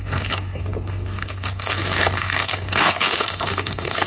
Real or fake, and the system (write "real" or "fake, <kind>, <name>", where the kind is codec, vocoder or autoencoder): fake, codec, SNAC